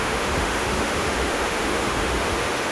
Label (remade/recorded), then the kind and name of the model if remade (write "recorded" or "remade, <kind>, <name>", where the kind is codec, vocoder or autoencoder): remade, autoencoder, DAC-VAE